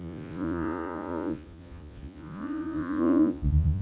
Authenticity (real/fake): fake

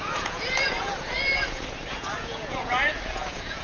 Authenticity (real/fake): fake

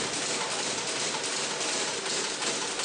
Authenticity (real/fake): real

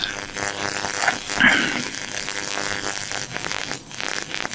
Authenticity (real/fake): real